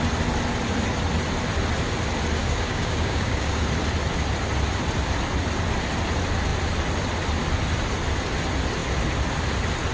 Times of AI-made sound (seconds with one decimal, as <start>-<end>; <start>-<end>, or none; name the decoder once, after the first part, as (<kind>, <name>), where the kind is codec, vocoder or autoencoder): 2.4-3.6 (codec, DAC)